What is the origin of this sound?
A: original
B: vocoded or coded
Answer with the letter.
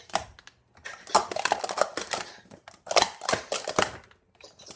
A